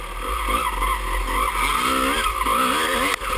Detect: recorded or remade recorded